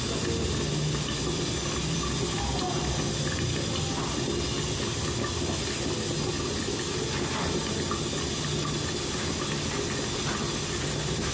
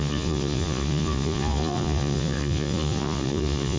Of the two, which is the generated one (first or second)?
second